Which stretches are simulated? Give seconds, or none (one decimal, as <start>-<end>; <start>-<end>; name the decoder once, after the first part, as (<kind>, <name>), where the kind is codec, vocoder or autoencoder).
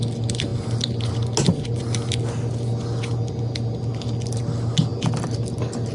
none